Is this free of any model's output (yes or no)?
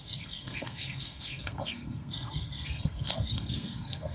no